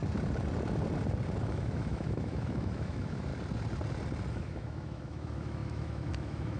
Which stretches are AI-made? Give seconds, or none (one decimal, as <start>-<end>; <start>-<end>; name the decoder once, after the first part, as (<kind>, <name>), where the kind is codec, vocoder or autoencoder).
1.4-3.3 (autoencoder, DAC-VAE); 4.3-6.6

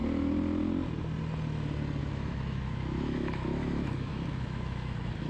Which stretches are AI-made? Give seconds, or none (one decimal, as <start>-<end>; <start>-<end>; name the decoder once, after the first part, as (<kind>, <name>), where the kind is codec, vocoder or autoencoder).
2.0-5.3 (autoencoder, DAC-VAE)

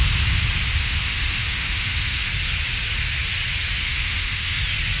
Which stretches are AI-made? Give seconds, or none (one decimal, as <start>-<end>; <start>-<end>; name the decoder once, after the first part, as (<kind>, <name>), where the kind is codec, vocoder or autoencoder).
0.8-2.3 (autoencoder, DAC-VAE); 3.8-4.6